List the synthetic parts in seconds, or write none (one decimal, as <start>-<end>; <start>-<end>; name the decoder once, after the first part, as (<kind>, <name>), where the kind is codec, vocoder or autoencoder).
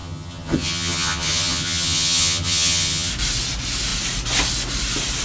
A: 0.0-3.1 (vocoder, HiFi-GAN)